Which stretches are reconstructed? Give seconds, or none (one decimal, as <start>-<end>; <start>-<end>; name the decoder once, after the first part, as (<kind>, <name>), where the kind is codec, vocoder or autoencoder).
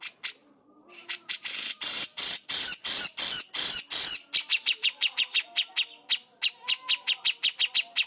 0.4-2.9 (vocoder, BigVGAN v2); 4.5-5.7